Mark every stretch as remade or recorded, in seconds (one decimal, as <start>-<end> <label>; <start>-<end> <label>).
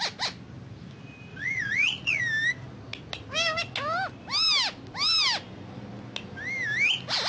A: 0.0-1.3 recorded; 1.3-2.2 remade; 2.2-7.3 recorded